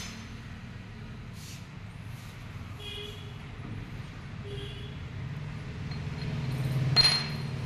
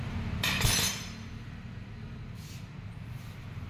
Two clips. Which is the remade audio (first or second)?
second